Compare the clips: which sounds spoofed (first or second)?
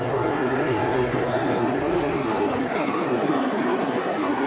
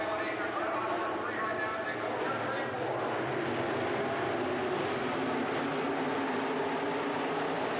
first